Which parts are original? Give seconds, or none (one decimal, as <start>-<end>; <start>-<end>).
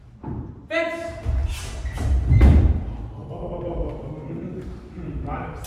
0.0-5.7